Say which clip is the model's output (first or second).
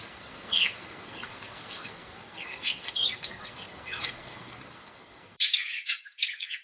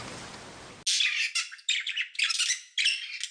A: first